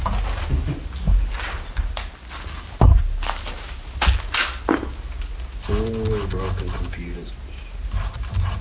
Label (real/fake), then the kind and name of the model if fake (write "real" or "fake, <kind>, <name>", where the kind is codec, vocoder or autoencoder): real